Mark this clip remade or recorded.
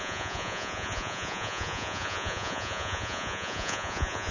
remade